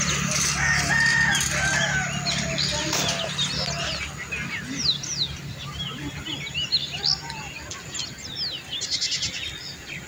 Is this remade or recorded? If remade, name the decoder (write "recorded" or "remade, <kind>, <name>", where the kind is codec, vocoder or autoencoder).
recorded